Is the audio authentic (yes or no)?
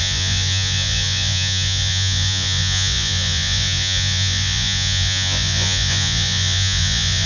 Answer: no